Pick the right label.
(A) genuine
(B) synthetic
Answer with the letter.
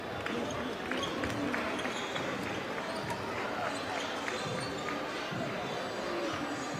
A